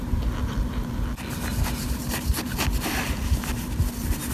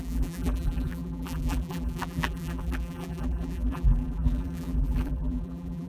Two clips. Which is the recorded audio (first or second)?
first